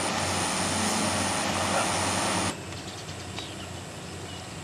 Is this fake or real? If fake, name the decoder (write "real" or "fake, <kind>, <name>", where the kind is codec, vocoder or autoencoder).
real